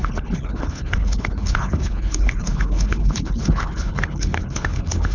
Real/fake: fake